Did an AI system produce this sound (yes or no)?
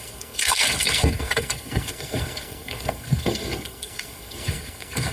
yes